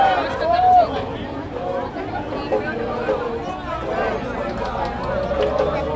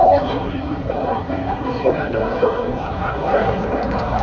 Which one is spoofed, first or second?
second